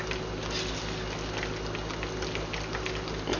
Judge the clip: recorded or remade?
recorded